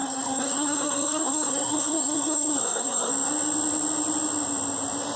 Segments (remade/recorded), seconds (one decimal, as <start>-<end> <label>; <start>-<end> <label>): 0.0-3.1 remade; 3.1-5.2 recorded